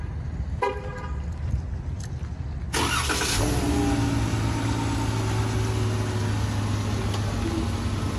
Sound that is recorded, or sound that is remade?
recorded